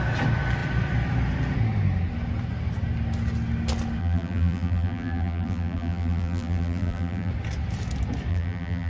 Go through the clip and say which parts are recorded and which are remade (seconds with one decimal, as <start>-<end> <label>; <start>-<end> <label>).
0.0-4.0 recorded; 4.0-7.3 remade; 7.3-8.3 recorded; 8.3-8.9 remade